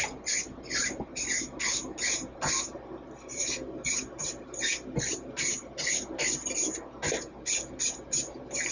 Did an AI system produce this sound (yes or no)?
no